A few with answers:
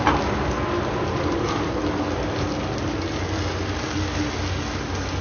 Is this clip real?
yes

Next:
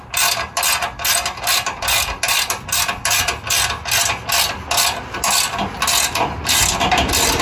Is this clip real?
yes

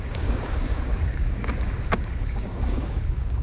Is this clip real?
no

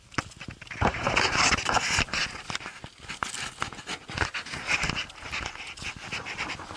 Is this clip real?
yes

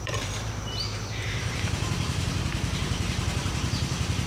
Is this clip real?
no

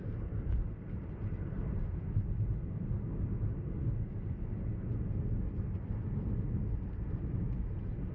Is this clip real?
yes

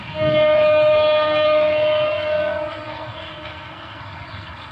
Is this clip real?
no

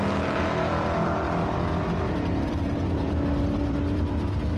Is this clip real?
no